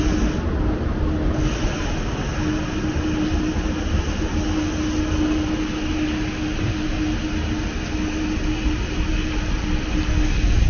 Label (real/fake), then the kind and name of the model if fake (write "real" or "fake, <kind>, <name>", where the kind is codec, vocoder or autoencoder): real